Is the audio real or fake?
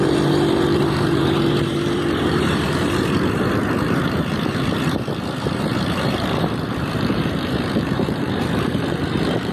fake